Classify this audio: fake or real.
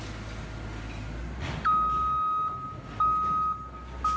real